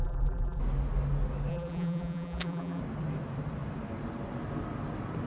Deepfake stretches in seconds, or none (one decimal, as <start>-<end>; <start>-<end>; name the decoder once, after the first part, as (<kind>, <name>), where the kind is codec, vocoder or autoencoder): 0.0-0.6 (vocoder, BigVGAN v2); 1.5-2.8